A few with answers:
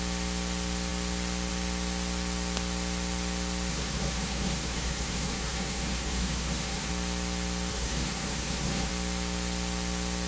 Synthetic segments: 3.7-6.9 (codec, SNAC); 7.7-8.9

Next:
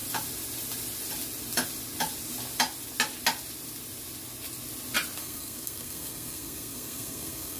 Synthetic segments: 5.2-7.6 (codec, SNAC)

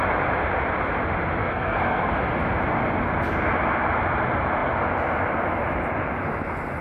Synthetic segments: 1.4-2.1 (codec, SNAC)

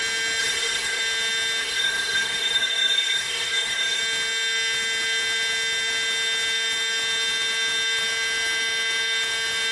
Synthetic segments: 0.4-1.0 (codec, SNAC); 1.6-4.0

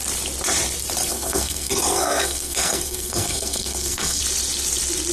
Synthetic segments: 1.1-4.2 (codec, SNAC)